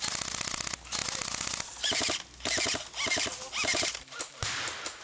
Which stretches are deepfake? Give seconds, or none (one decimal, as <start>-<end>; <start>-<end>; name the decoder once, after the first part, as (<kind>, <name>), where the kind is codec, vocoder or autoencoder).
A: none